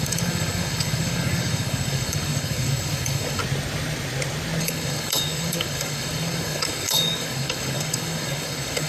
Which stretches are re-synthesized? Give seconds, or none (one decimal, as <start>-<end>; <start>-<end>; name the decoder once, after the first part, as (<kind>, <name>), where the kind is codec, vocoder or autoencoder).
0.0-3.4 (codec, DAC); 4.6-8.9